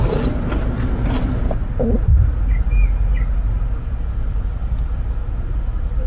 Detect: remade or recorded recorded